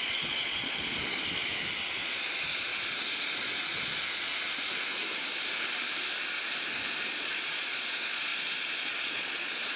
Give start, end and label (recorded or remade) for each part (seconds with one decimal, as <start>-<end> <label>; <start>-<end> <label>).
0.0-0.9 remade; 0.9-1.9 recorded; 1.9-2.7 remade; 2.7-3.4 recorded; 3.4-4.3 remade; 4.3-7.1 recorded; 7.1-8.3 remade; 8.3-9.0 recorded; 9.0-9.8 remade